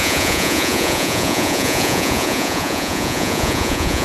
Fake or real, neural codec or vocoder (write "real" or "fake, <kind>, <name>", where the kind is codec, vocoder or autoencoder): fake, vocoder, Vocos